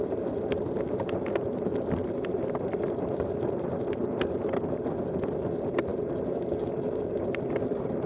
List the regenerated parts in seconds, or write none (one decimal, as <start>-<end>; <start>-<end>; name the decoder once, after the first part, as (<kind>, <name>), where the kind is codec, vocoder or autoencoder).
none